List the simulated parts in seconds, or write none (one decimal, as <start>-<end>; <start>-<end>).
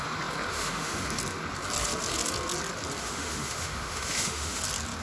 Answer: 0.5-1.1; 3.0-4.6